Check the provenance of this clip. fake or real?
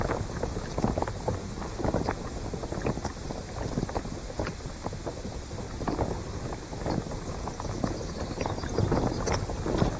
real